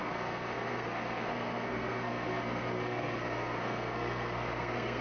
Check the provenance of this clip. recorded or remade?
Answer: remade